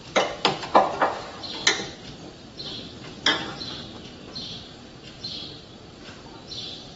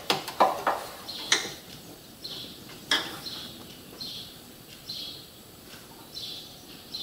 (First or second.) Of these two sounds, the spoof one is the second